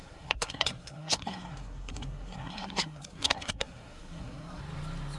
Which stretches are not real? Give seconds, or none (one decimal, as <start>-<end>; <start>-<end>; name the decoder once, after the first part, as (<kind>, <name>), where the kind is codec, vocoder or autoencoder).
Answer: 0.0-4.6 (codec, SNAC)